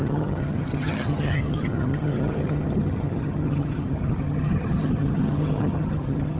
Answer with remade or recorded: remade